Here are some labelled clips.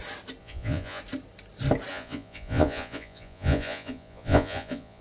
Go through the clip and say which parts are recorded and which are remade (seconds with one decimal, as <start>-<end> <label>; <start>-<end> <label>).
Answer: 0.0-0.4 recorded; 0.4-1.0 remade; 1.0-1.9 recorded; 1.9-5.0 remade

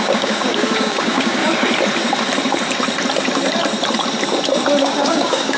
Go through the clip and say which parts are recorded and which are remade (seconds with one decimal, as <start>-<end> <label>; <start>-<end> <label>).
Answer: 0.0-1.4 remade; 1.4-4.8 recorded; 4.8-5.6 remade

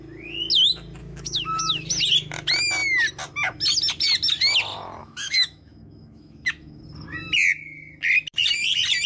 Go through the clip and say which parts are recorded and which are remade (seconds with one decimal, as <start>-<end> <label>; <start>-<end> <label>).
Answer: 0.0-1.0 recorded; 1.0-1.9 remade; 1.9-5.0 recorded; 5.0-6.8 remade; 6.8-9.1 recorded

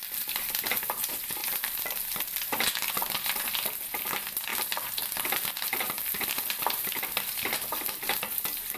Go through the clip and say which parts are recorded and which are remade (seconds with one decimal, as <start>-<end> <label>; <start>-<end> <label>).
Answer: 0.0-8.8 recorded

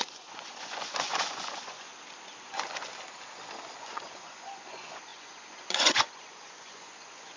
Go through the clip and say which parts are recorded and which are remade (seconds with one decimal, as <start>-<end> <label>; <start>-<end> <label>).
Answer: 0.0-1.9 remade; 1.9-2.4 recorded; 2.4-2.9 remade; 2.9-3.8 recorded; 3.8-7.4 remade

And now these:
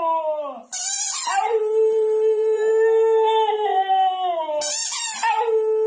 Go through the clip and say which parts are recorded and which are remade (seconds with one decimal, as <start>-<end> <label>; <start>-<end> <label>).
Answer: 0.0-1.3 recorded; 1.3-2.7 remade; 2.7-5.9 recorded

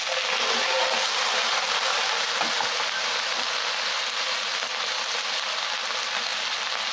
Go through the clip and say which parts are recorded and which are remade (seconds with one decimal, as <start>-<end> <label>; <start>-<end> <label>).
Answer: 0.0-6.9 recorded

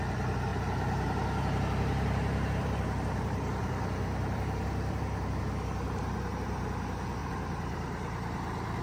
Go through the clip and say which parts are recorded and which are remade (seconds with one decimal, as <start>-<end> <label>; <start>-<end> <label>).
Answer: 0.0-0.5 recorded; 0.5-5.4 remade; 5.4-7.2 recorded; 7.2-8.8 remade